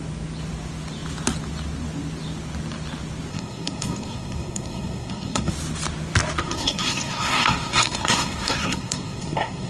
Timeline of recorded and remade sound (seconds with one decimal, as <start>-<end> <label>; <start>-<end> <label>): 0.0-3.3 recorded; 3.3-5.5 remade; 5.5-6.4 recorded; 6.4-9.7 remade